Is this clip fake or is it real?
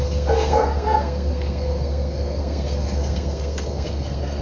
fake